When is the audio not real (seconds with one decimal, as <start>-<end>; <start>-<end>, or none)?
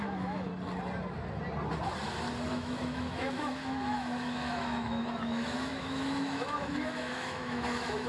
0.0-0.5; 2.5-8.1